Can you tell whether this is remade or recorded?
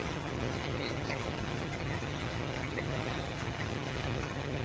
remade